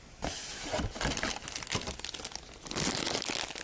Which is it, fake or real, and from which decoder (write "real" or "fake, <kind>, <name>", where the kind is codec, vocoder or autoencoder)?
real